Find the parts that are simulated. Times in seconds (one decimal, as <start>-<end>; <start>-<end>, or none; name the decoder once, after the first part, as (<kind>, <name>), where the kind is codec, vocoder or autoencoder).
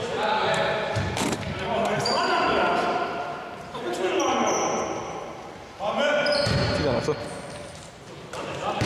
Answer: 0.0-2.7 (vocoder, BigVGAN v2); 5.0-6.8; 7.6-8.9